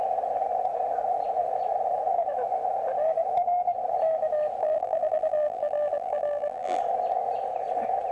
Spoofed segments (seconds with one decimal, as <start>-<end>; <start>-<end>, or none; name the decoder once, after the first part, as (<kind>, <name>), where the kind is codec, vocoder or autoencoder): 4.6-6.8 (vocoder, BigVGAN v2)